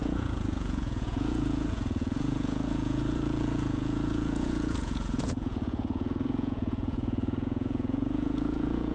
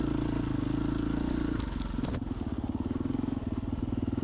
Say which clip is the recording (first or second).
second